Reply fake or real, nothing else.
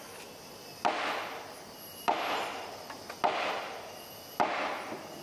real